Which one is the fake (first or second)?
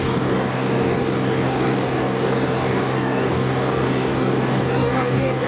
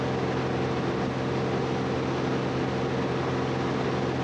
first